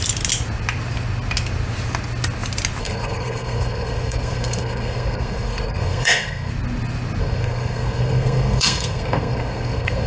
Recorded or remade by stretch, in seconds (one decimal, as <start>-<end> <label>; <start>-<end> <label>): 0.0-2.8 recorded; 2.8-6.5 remade; 6.5-7.2 recorded; 7.2-10.1 remade